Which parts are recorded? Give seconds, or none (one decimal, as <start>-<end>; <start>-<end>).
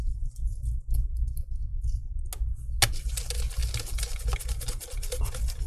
0.0-1.7; 2.2-5.7